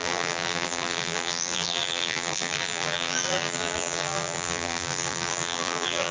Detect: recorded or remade remade